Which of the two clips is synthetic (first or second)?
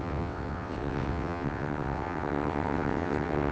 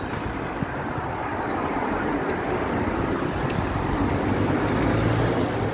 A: first